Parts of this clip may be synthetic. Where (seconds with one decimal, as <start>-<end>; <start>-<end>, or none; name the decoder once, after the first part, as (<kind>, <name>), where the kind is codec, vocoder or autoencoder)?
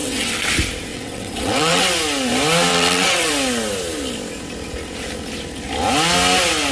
0.0-0.5 (vocoder, WaveNeXt); 0.9-1.8; 2.7-3.3